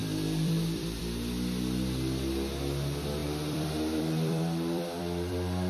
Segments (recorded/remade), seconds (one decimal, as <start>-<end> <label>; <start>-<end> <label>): 0.0-1.0 remade; 1.0-3.2 recorded; 3.2-5.7 remade